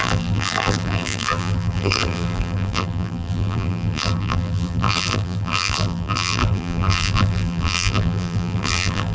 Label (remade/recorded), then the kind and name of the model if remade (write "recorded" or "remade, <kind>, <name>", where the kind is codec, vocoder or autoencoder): remade, vocoder, BigVGAN v2